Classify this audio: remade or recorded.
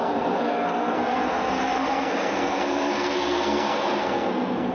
remade